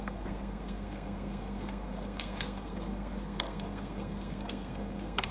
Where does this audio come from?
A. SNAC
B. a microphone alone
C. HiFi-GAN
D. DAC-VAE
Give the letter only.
A